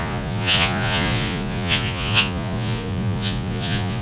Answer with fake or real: fake